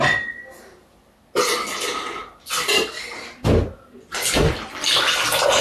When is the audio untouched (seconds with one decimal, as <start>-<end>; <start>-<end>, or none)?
0.0-5.6